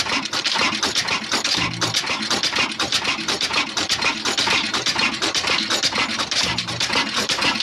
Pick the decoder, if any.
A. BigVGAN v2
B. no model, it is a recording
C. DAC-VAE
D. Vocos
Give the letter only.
A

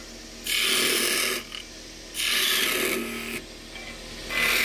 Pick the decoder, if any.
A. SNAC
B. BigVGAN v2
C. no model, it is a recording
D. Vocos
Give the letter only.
C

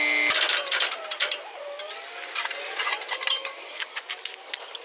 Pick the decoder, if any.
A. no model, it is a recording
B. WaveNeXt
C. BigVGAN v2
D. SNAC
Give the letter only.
A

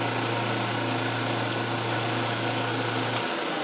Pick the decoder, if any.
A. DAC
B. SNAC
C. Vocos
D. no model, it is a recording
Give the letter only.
D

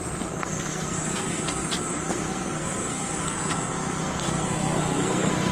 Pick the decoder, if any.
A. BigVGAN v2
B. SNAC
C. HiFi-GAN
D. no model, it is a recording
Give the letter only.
B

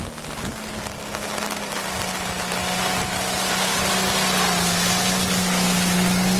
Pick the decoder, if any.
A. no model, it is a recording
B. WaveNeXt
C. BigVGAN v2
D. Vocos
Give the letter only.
A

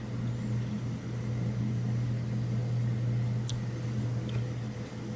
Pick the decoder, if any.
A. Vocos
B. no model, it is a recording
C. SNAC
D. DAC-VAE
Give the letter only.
B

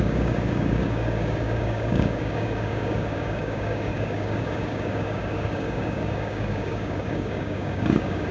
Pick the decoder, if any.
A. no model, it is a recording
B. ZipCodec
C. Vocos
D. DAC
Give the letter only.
D